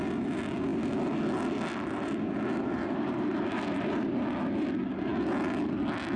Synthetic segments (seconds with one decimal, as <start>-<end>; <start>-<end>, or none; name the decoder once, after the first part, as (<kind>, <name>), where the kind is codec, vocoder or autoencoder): none